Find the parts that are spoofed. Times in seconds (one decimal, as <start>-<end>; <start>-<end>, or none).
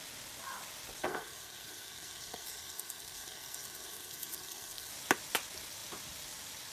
1.0-4.9